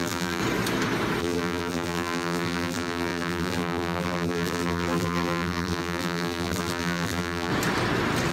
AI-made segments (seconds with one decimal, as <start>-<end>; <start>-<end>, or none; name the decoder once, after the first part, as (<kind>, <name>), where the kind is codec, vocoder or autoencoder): 0.0-0.4 (vocoder, BigVGAN v2); 1.2-7.5